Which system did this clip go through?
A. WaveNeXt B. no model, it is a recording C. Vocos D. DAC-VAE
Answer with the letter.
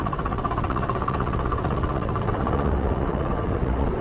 A